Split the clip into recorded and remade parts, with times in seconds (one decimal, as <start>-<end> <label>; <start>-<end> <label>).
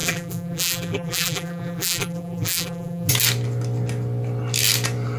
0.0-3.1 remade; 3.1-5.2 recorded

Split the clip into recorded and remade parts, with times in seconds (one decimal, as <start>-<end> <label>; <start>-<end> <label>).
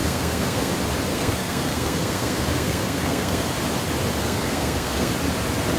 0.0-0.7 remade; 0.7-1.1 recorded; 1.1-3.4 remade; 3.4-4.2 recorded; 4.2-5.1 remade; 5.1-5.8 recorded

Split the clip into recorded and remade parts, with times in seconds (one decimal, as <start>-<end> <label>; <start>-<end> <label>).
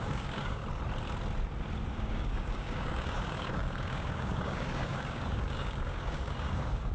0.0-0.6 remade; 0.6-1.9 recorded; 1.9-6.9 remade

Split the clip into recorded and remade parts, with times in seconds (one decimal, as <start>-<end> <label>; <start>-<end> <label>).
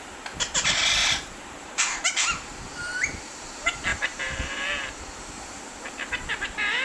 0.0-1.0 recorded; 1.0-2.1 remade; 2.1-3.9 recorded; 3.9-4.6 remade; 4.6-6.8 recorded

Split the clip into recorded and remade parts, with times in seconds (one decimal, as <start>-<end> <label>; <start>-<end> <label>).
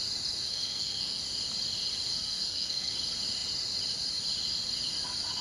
0.0-0.5 recorded; 0.5-1.2 remade; 1.2-2.1 recorded; 2.1-2.9 remade; 2.9-5.4 recorded